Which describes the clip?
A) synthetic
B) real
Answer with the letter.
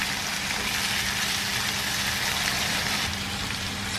B